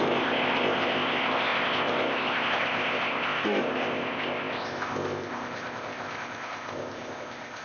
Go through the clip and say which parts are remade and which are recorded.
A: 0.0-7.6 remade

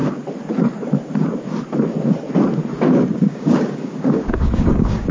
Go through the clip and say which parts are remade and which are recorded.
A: 0.0-3.1 recorded; 3.1-5.1 remade

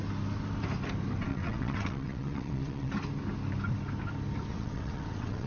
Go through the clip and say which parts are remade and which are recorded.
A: 0.0-1.3 recorded; 1.3-2.9 remade; 2.9-4.5 recorded; 4.5-5.5 remade

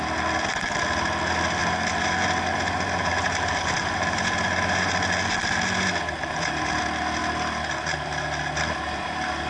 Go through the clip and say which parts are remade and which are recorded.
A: 0.0-1.6 recorded; 1.6-4.9 remade; 4.9-9.5 recorded

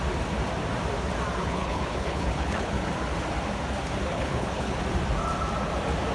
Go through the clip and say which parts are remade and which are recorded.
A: 0.0-1.4 recorded; 1.4-2.9 remade; 2.9-4.1 recorded; 4.1-4.8 remade; 4.8-6.1 recorded

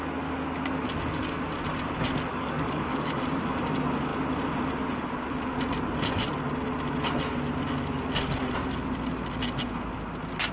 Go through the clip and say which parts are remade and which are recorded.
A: 0.0-2.3 recorded; 2.3-3.2 remade; 3.2-10.5 recorded

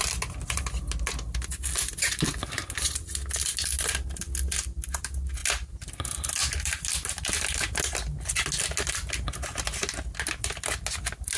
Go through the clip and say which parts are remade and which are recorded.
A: 0.0-11.4 recorded

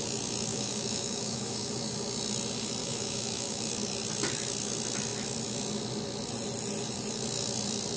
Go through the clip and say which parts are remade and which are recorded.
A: 0.0-0.5 recorded; 0.5-1.7 remade; 1.7-2.8 recorded; 2.8-3.7 remade; 3.7-8.0 recorded